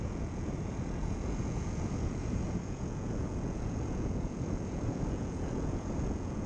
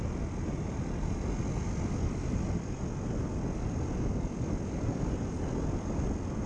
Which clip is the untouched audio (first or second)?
second